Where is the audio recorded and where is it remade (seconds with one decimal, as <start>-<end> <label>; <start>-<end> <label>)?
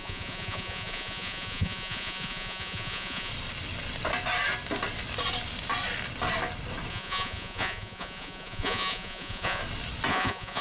0.0-3.3 remade; 3.3-6.9 recorded; 6.9-9.6 remade; 9.6-10.1 recorded; 10.1-10.6 remade